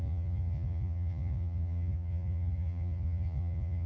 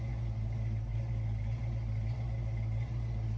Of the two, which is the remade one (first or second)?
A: first